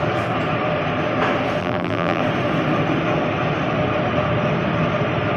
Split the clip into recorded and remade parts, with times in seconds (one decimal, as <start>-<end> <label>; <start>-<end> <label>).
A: 0.0-1.6 recorded; 1.6-2.2 remade; 2.2-5.4 recorded